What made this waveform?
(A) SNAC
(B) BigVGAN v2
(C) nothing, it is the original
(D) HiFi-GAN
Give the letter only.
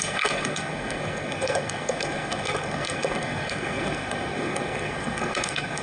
A